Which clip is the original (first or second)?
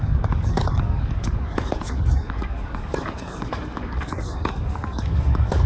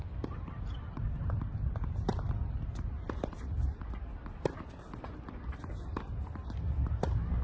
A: second